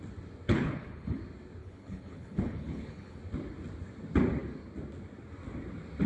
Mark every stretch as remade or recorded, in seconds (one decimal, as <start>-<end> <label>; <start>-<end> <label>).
0.0-0.5 recorded; 0.5-1.2 remade; 1.2-1.6 recorded; 1.6-3.2 remade; 3.2-6.1 recorded